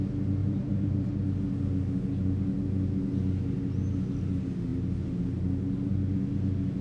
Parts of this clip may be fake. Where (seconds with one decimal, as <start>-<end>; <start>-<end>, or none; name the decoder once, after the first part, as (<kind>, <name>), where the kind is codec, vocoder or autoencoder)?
0.4-1.1 (vocoder, BigVGAN v2)